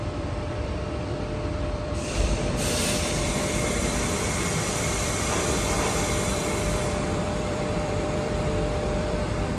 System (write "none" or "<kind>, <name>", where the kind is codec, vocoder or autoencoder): vocoder, BigVGAN v2